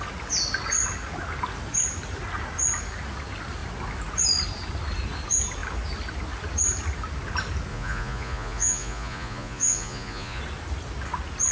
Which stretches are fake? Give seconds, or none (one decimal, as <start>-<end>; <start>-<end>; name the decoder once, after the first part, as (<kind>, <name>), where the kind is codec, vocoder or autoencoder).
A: 7.7-10.4 (vocoder, Vocos)